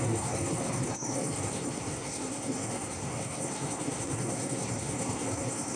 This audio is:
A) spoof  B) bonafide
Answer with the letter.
A